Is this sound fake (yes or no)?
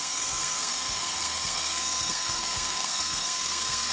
yes